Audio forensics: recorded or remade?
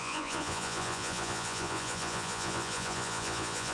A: remade